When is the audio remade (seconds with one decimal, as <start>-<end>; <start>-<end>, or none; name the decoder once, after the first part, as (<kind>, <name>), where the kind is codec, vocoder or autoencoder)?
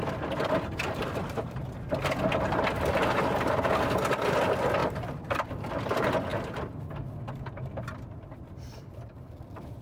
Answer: 1.0-1.6 (vocoder, BigVGAN v2); 4.8-5.5